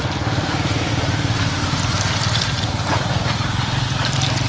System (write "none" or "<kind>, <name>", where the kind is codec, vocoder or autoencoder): vocoder, BigVGAN v2